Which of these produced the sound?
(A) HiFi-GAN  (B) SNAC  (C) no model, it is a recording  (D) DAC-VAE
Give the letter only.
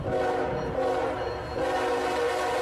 C